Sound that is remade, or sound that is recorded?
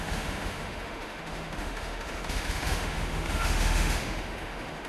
remade